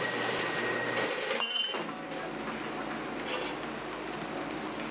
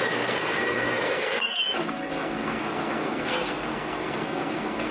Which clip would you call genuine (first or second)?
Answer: first